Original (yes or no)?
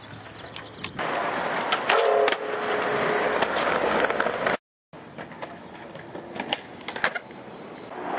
yes